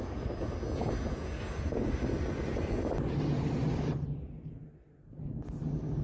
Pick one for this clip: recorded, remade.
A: recorded